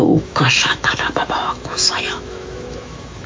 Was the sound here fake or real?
fake